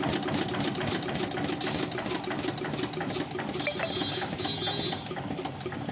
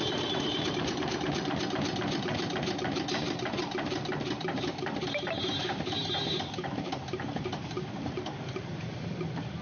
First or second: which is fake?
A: second